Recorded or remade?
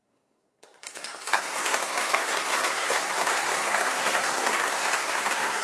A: remade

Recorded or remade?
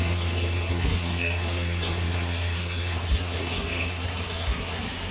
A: remade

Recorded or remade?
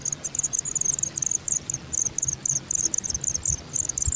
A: recorded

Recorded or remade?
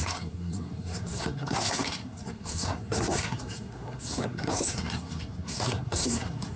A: remade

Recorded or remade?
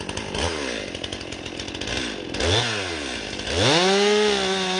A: recorded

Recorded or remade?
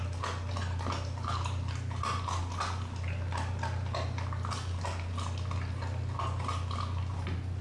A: recorded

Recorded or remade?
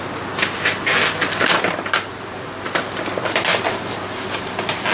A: recorded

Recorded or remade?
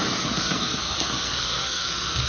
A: remade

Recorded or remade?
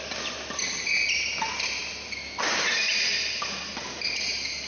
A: recorded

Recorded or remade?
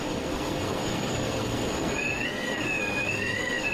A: remade